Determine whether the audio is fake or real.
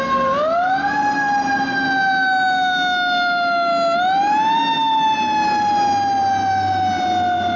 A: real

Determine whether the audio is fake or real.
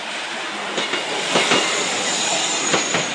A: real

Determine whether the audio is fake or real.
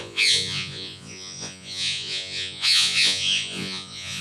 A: fake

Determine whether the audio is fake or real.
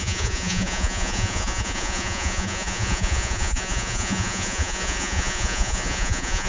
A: fake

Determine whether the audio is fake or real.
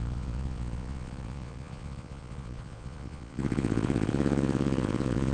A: fake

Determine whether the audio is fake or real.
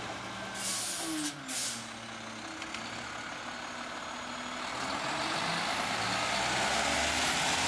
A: real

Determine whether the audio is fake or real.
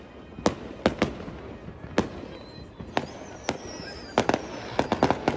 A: real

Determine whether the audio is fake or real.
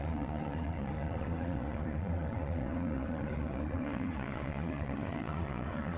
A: fake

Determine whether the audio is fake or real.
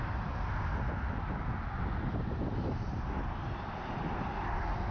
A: real